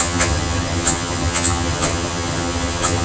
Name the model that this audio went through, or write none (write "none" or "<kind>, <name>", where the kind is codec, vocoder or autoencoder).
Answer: vocoder, HiFi-GAN